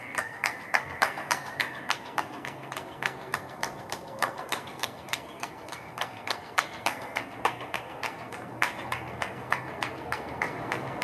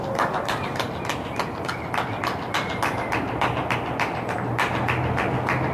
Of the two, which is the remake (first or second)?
first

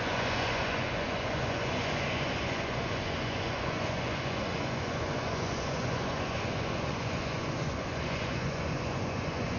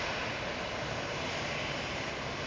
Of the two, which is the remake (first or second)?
first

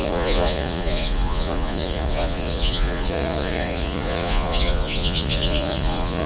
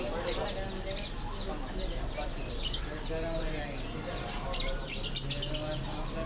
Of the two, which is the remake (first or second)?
first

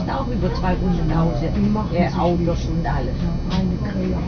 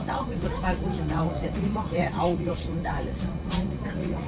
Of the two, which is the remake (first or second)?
second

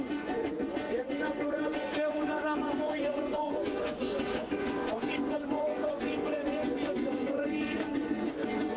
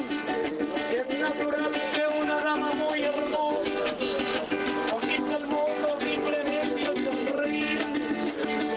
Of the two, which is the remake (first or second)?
first